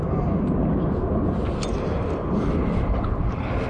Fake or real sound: real